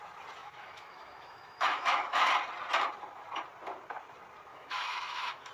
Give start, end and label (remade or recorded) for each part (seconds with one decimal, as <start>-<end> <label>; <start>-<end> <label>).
0.0-0.4 recorded; 0.4-2.3 remade; 2.3-4.5 recorded; 4.5-5.5 remade